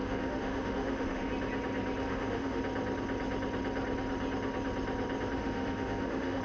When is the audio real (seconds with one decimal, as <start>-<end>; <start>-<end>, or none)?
1.3-2.0; 2.6-5.4